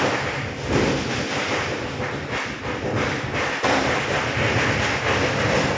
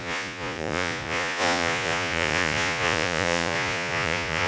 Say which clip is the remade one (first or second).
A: second